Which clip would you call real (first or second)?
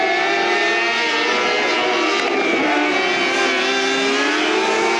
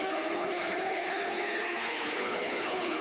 first